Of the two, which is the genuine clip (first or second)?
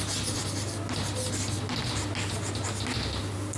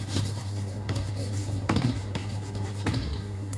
first